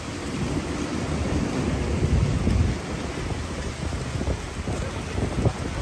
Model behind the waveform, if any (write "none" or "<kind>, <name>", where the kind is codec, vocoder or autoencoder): none